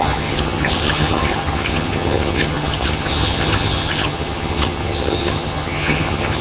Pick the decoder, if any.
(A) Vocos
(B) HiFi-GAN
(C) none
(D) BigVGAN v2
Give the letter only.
B